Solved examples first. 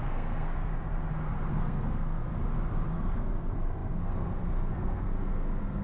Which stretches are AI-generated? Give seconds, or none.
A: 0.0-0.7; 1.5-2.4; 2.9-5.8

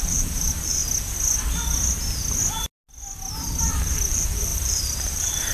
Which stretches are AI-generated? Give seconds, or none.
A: 0.0-0.8; 3.6-5.5

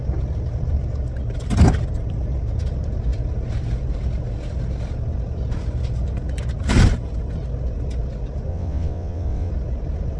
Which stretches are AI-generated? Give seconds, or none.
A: 8.5-9.5

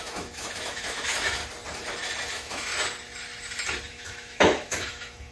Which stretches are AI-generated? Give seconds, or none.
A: 0.0-1.4; 2.3-2.7; 3.9-5.3

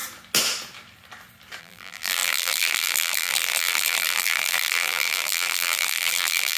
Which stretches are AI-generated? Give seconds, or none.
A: 1.6-6.6

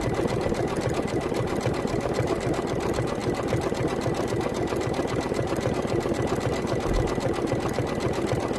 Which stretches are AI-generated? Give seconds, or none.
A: none

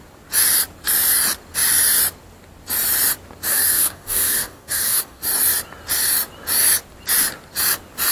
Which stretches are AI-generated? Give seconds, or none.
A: 3.5-5.2

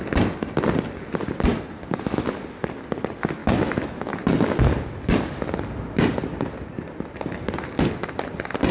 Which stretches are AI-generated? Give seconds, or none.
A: 3.4-4.1